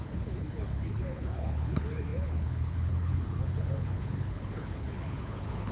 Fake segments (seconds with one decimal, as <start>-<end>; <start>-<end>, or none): 0.0-5.7